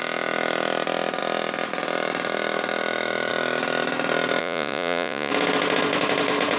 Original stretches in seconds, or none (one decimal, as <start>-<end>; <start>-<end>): 0.0-4.4; 5.3-6.6